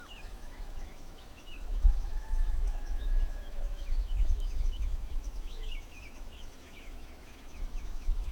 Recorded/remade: remade